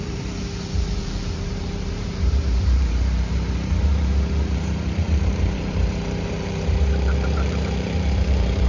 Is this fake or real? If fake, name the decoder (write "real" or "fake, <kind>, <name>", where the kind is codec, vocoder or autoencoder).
fake, vocoder, BigVGAN v2